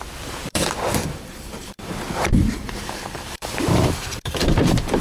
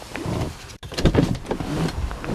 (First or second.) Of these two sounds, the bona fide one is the second